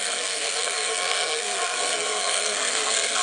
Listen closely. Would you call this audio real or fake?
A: fake